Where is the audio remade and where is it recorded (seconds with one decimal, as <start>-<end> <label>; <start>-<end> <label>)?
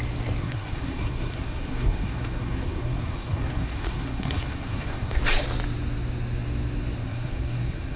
0.0-0.4 recorded; 0.4-5.2 remade; 5.2-7.0 recorded; 7.0-8.0 remade